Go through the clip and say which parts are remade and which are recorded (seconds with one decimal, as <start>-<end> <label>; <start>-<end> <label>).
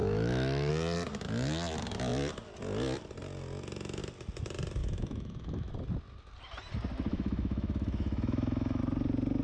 0.0-0.7 remade; 0.7-4.8 recorded; 4.8-5.7 remade; 5.7-7.1 recorded; 7.1-8.8 remade; 8.8-9.4 recorded